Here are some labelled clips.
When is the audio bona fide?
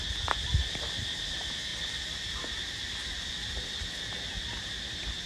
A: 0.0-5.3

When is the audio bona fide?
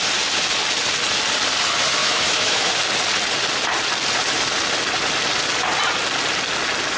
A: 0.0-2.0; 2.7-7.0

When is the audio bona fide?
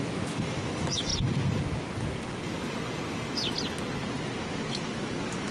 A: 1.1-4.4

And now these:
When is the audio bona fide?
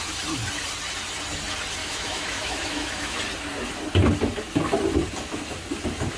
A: 0.0-1.8; 3.2-6.2